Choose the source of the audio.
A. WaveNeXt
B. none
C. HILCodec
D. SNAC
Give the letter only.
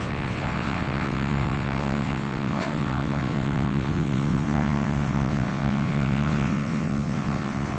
A